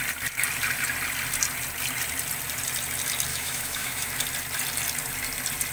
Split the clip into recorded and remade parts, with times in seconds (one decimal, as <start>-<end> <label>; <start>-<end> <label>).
0.0-3.3 recorded; 3.3-4.1 remade; 4.1-5.7 recorded